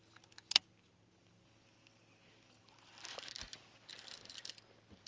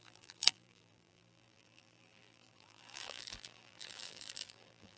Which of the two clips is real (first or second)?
first